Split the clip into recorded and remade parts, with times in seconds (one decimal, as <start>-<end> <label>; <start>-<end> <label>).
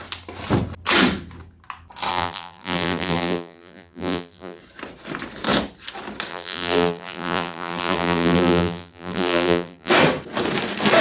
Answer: 0.0-2.1 recorded; 2.1-4.6 remade; 4.6-6.3 recorded; 6.3-9.9 remade; 9.9-11.0 recorded